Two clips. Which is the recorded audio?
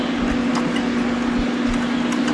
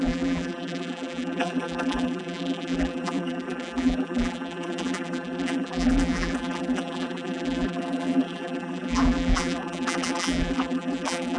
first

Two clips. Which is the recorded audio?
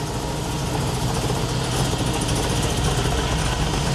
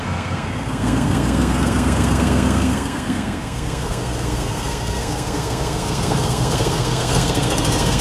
first